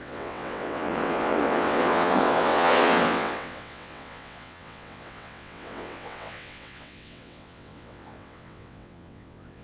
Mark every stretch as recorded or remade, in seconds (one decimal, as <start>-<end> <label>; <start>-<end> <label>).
0.0-9.6 remade

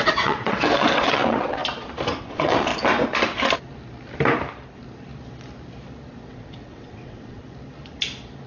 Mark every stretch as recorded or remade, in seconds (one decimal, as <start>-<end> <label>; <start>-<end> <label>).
0.0-1.6 remade; 1.6-2.2 recorded; 2.2-2.7 remade; 2.7-6.3 recorded; 6.3-7.4 remade; 7.4-8.5 recorded

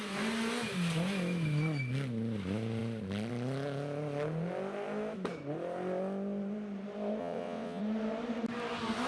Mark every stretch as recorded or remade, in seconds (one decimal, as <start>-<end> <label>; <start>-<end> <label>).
0.0-7.2 recorded; 7.2-7.8 remade; 7.8-9.1 recorded

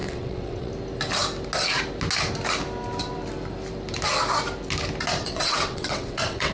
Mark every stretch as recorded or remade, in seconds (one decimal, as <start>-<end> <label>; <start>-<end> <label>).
0.0-0.7 remade; 0.7-5.2 recorded; 5.2-6.5 remade

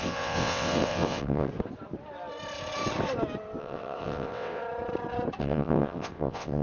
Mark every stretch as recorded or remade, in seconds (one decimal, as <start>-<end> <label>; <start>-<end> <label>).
0.0-1.5 remade; 1.5-3.6 recorded; 3.6-4.6 remade; 4.6-5.4 recorded; 5.4-6.6 remade

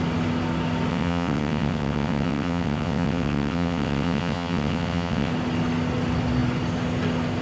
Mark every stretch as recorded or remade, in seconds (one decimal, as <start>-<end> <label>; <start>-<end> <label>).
0.0-0.9 recorded; 0.9-5.3 remade; 5.3-7.4 recorded

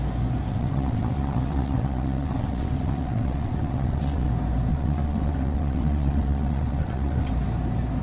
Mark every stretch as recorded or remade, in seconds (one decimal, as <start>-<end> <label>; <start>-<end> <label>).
0.0-0.5 recorded; 0.5-4.3 remade; 4.3-4.7 recorded; 4.7-7.3 remade; 7.3-8.0 recorded

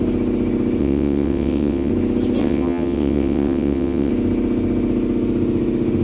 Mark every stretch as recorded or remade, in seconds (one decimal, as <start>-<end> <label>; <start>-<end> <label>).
0.0-0.8 recorded; 0.8-1.9 remade; 1.9-2.4 recorded; 2.4-4.1 remade; 4.1-6.0 recorded